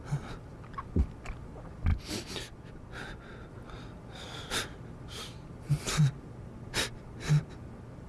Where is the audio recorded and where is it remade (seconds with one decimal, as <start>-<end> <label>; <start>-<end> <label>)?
0.0-8.1 recorded